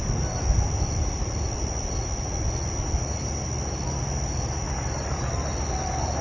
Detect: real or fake real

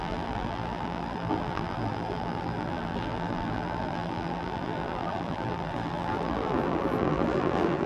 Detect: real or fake fake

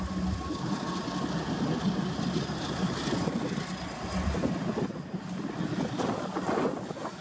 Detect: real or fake real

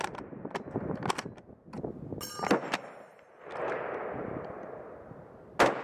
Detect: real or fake real